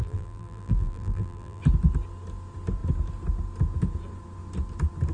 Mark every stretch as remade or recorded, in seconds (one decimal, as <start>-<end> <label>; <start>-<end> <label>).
0.0-1.6 remade; 1.6-5.1 recorded

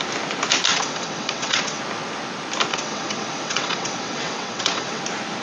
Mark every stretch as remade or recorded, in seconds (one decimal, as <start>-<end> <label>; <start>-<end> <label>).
0.0-0.7 recorded; 0.7-1.8 remade; 1.8-2.7 recorded; 2.7-5.0 remade; 5.0-5.4 recorded

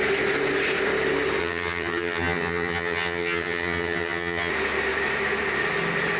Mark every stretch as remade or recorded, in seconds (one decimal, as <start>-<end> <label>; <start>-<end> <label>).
0.0-1.4 recorded; 1.4-4.5 remade; 4.5-6.2 recorded

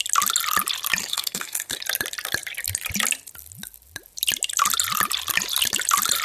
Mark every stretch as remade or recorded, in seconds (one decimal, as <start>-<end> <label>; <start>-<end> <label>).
0.0-1.0 recorded; 1.0-1.8 remade; 1.8-6.2 recorded

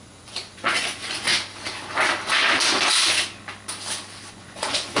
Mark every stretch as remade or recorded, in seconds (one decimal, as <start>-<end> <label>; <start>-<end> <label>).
0.0-1.3 remade; 1.3-4.3 recorded; 4.3-5.0 remade

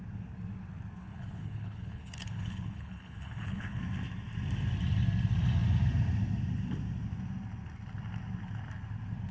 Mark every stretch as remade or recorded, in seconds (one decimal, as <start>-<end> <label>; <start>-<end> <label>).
0.0-1.0 recorded; 1.0-3.8 remade; 3.8-9.3 recorded

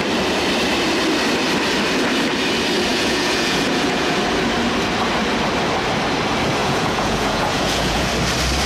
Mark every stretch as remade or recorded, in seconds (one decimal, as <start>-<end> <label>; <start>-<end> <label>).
0.0-2.9 recorded; 2.9-4.2 remade; 4.2-6.6 recorded; 6.6-8.1 remade; 8.1-8.7 recorded